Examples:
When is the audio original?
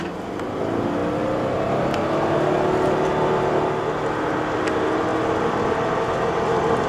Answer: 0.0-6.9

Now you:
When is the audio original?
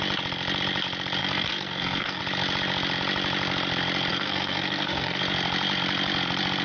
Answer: 0.0-1.2; 2.2-4.1; 5.2-6.6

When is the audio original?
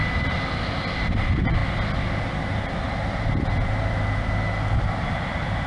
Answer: 0.0-1.0; 1.6-5.0